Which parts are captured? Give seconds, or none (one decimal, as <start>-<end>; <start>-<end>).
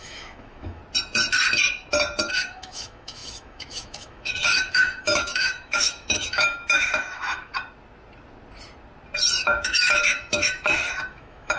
0.8-2.3; 7.5-9.4